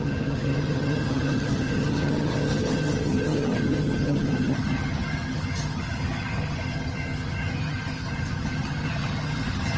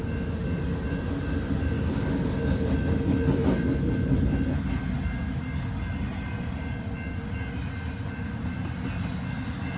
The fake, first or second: first